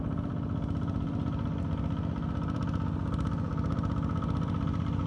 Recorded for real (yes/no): yes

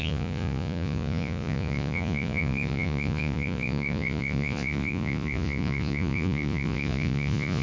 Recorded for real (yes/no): no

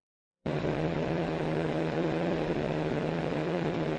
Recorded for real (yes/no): no